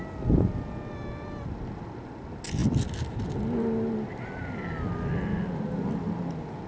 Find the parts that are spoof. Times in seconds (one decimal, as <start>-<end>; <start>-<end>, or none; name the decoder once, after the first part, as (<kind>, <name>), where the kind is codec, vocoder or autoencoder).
none